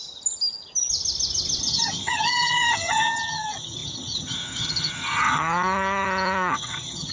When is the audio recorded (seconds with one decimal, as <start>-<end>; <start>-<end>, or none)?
0.0-1.6